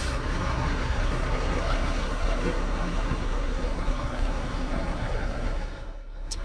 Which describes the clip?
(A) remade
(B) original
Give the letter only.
A